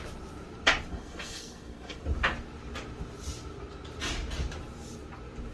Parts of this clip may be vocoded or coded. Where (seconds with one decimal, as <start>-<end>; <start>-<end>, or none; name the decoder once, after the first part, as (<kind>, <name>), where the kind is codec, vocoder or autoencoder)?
0.9-2.0 (codec, SNAC)